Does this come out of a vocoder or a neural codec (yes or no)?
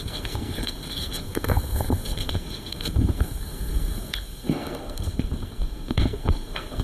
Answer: yes